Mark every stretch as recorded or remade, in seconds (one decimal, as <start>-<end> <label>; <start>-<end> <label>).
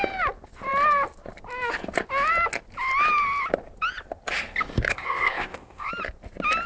0.0-4.9 recorded; 4.9-5.9 remade; 5.9-6.7 recorded